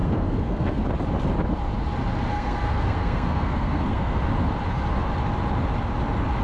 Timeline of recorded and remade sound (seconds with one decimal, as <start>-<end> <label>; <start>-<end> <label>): 0.0-0.8 remade; 0.8-2.3 recorded; 2.3-4.2 remade; 4.2-6.4 recorded